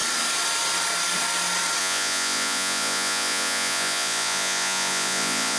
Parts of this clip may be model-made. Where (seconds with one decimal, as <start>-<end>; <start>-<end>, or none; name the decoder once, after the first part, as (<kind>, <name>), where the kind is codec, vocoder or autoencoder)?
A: 1.8-5.6 (vocoder, Vocos)